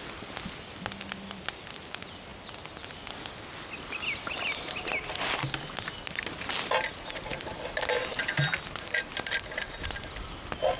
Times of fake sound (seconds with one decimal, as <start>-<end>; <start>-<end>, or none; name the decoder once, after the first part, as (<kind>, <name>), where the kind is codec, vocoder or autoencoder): none